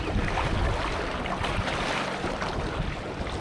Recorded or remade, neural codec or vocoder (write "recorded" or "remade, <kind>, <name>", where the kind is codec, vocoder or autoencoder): recorded